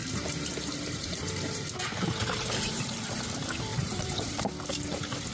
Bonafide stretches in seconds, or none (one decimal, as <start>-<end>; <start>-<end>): 3.2-3.7; 4.4-5.3